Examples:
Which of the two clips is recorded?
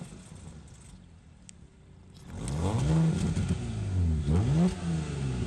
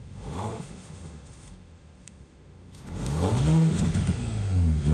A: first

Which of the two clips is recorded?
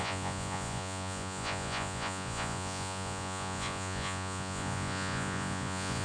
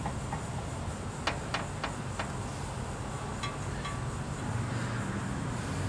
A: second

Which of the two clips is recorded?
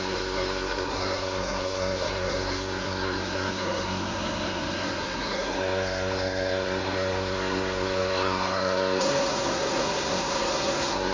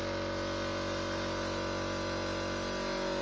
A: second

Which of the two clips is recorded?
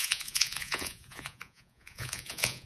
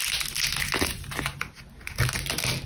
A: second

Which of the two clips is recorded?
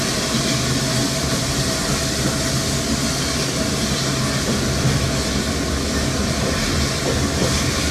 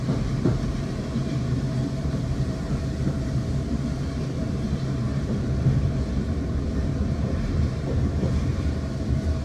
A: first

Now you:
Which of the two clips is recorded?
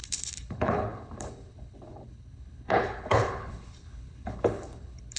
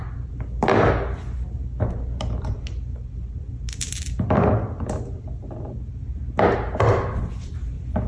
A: second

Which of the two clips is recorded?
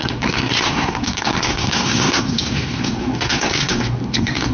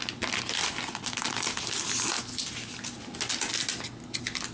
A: second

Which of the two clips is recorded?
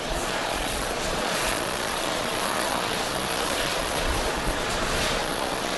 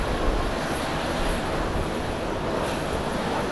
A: second